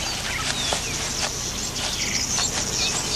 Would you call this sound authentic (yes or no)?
yes